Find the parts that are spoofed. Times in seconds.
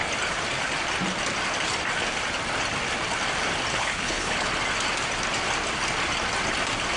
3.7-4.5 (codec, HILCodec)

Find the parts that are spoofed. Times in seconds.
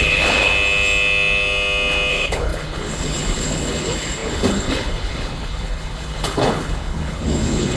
0.0-0.5 (codec, HILCodec); 2.1-7.8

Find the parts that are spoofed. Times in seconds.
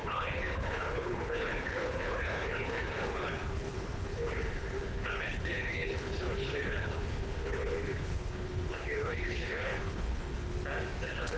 0.0-10.5 (codec, HILCodec); 11.0-11.4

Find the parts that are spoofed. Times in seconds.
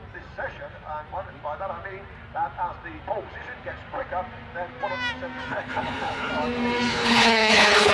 5.5-6.3 (codec, HILCodec); 6.9-7.9